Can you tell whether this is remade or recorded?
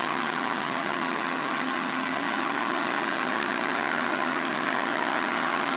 remade